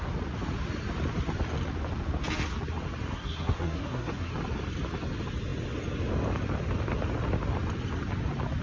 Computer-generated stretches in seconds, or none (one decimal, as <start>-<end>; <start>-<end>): 3.1-4.3

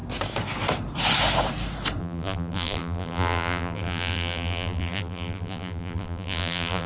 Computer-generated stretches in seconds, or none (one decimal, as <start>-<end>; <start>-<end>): 2.0-6.9

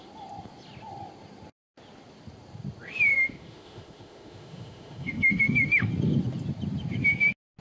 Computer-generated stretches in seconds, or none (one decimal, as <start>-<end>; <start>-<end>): 3.1-5.9